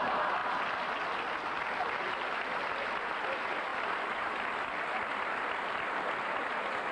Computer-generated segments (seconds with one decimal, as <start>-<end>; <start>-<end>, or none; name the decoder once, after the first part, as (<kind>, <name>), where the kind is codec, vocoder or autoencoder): none